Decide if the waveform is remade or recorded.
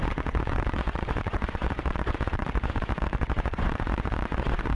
remade